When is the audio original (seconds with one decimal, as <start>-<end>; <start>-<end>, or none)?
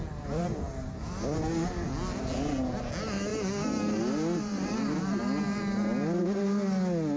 0.0-7.2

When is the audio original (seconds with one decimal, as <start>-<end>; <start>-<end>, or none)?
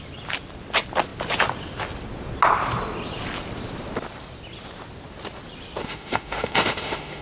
0.0-5.8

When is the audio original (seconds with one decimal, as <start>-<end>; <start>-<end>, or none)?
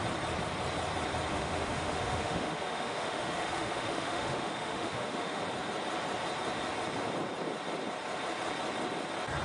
0.0-1.3; 5.4-9.4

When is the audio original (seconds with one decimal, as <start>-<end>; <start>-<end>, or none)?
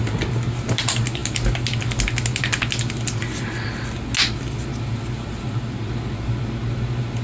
0.0-7.2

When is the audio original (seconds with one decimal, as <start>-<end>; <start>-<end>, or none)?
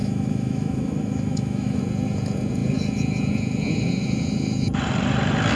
1.8-5.6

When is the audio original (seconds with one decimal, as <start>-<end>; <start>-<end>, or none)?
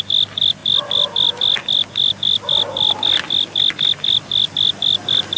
0.0-5.4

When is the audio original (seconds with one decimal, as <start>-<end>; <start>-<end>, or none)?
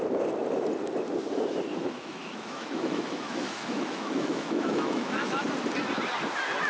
0.0-1.8; 5.4-6.7